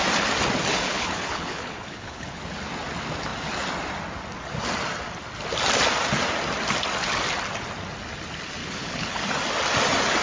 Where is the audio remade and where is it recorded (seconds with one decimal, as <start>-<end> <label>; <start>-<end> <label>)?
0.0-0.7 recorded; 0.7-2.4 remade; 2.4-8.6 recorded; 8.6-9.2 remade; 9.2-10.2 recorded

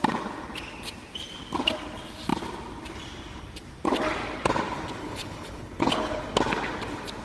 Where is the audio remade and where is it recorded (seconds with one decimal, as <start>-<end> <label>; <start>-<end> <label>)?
0.0-5.0 recorded; 5.0-6.2 remade; 6.2-7.2 recorded

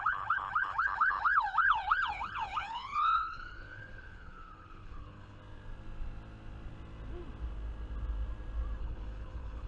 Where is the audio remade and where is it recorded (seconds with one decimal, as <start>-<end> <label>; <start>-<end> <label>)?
0.0-5.4 remade; 5.4-8.8 recorded; 8.8-9.7 remade

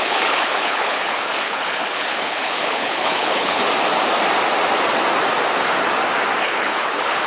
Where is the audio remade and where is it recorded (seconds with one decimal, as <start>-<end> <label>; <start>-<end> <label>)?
0.0-3.6 remade; 3.6-6.4 recorded; 6.4-7.3 remade

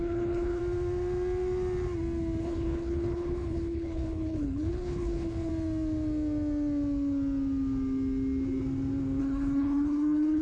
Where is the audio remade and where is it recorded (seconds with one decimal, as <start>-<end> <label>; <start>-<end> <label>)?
0.0-0.6 remade; 0.6-2.4 recorded; 2.4-5.5 remade; 5.5-9.2 recorded; 9.2-10.4 remade